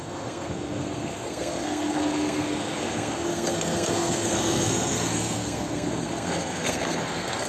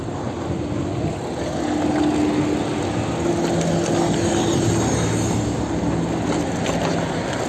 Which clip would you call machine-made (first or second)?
first